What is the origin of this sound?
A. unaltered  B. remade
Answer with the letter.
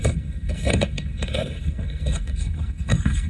B